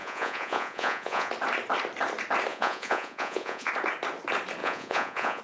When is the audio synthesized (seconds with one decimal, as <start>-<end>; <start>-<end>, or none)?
0.0-1.3; 2.5-3.7; 4.6-5.4